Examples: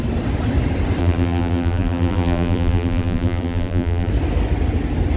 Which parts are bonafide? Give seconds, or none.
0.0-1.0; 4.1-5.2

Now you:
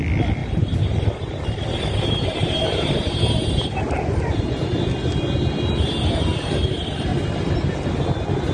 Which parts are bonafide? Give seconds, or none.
0.0-0.4; 3.8-7.1; 8.0-8.5

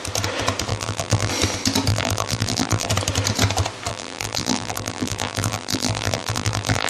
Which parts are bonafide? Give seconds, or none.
0.0-0.7; 1.3-1.9; 2.9-3.9

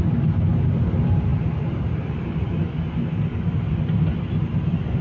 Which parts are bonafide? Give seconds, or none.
0.0-5.0

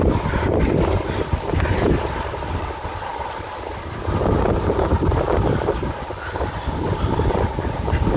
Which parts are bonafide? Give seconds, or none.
0.0-8.2

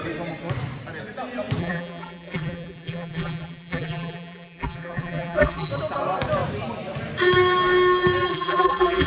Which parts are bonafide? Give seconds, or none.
0.0-1.6; 5.7-8.3

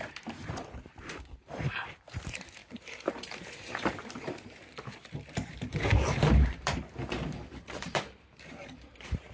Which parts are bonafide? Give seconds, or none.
none

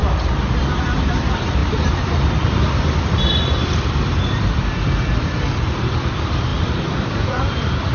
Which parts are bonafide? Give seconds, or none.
0.0-1.1